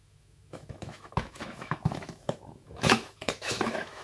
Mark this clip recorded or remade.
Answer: remade